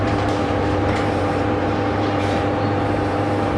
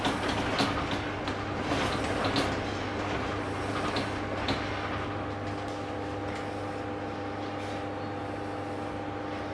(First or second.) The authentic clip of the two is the second